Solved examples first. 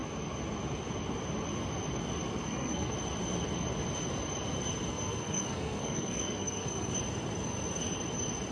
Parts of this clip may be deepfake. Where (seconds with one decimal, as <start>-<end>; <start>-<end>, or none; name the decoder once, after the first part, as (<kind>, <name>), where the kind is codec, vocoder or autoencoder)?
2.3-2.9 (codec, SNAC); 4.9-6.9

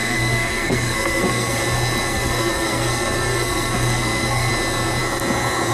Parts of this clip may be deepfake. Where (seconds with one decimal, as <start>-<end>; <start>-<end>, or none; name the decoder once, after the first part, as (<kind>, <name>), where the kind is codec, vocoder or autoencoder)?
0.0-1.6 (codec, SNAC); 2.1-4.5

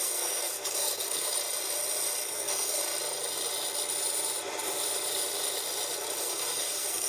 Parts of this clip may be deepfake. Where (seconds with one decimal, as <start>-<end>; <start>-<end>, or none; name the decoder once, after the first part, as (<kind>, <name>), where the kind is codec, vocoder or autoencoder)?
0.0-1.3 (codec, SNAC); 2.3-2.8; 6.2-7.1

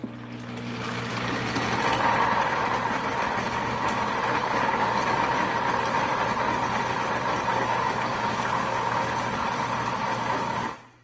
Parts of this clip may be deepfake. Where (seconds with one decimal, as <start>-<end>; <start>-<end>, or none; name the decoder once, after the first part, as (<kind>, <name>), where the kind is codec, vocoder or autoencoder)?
4.4-5.3 (codec, DAC); 7.5-9.0

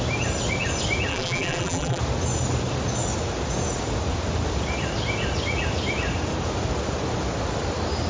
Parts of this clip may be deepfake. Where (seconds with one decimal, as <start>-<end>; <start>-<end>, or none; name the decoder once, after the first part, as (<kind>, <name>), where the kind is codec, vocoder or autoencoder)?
1.1-2.0 (vocoder, BigVGAN v2)

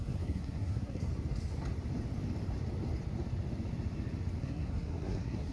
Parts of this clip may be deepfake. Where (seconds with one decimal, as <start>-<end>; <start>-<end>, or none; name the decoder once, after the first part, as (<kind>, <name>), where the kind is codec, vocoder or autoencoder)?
0.0-1.1 (codec, SNAC); 4.4-5.5